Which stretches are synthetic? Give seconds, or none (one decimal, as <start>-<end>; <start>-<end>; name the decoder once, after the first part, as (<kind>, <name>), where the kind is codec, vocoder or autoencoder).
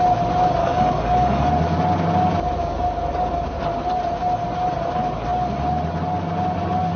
0.6-1.5 (codec, DAC)